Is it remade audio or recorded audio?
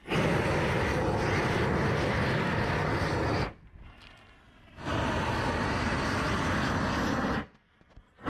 recorded